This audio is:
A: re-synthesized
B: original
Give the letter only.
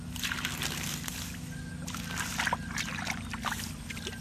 B